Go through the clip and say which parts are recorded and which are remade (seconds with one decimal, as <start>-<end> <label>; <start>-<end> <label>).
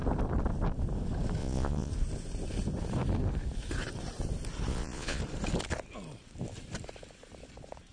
0.0-1.4 recorded; 1.4-1.9 remade; 1.9-4.7 recorded; 4.7-5.2 remade; 5.2-7.9 recorded